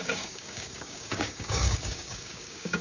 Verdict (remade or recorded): remade